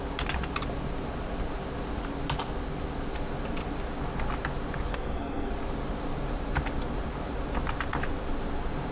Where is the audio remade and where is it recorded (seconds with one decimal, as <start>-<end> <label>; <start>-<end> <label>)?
0.0-4.9 recorded; 4.9-5.5 remade; 5.5-8.9 recorded